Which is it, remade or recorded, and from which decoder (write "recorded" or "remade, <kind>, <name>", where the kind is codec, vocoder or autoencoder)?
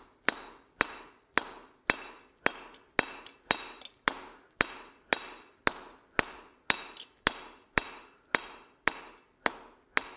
recorded